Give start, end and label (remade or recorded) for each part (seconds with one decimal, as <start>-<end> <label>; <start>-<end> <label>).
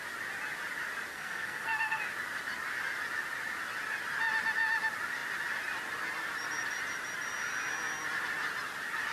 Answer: 0.0-1.1 recorded; 1.1-2.0 remade; 2.0-9.1 recorded